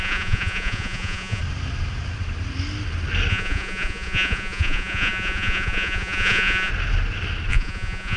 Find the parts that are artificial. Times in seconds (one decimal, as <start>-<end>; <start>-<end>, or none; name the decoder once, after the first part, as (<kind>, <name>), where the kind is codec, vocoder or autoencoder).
0.0-1.4 (vocoder, Vocos); 3.3-6.7; 7.5-8.2